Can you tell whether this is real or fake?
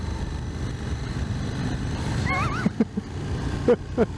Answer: real